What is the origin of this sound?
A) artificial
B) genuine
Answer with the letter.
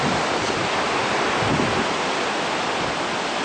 B